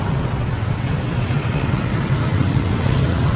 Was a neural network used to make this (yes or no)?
yes